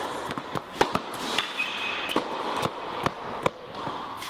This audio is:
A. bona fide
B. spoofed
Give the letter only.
A